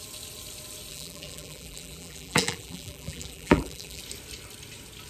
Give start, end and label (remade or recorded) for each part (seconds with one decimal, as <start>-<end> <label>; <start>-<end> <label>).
0.0-0.9 recorded; 0.9-4.0 remade; 4.0-5.1 recorded